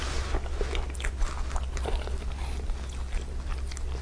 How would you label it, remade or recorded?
recorded